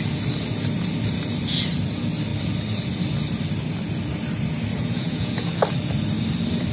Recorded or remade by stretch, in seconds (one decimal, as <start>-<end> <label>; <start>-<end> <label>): 0.0-4.7 recorded; 4.7-5.5 remade; 5.5-6.7 recorded